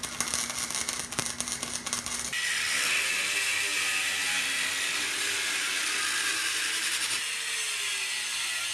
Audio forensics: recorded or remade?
recorded